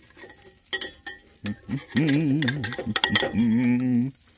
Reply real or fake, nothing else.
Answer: real